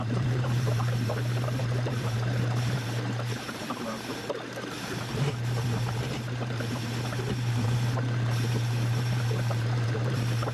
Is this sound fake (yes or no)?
yes